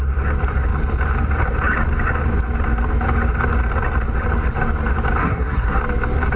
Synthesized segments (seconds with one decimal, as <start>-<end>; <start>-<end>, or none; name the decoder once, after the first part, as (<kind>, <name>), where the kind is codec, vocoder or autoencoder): 5.2-5.8 (codec, SNAC)